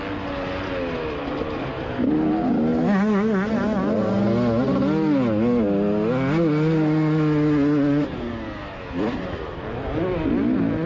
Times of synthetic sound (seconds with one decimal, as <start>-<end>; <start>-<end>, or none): none